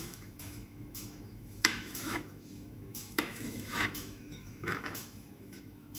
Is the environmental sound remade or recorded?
remade